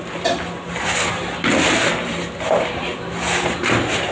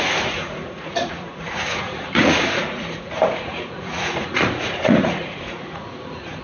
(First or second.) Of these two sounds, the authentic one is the first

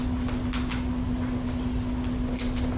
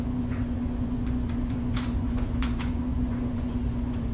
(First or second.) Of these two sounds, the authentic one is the first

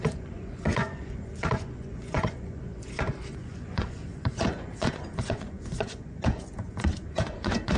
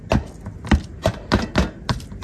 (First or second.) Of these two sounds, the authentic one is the second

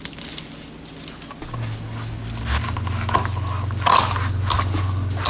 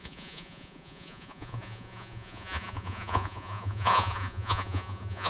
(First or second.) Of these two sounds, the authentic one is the first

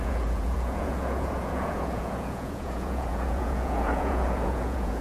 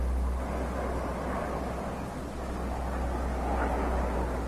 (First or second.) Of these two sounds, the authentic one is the second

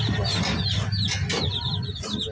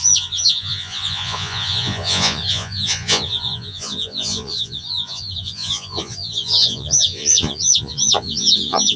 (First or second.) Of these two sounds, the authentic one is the first